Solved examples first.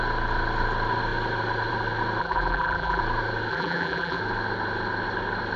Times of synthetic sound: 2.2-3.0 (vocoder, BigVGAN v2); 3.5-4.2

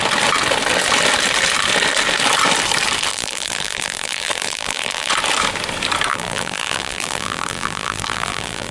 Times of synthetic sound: 3.1-5.1 (vocoder, BigVGAN v2); 6.1-8.7

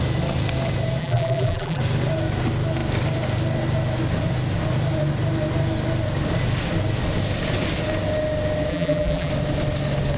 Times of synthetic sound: 1.0-1.8 (vocoder, BigVGAN v2); 8.7-9.3